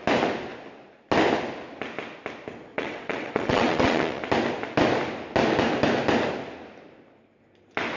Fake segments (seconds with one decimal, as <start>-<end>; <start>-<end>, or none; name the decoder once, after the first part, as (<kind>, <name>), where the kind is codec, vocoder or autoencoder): 2.7-4.2 (vocoder, WaveNeXt)